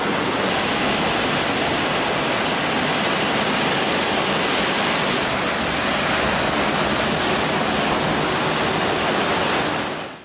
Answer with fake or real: real